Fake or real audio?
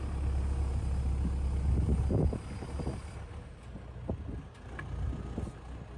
real